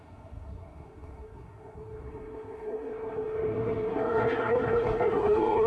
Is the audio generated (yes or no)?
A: yes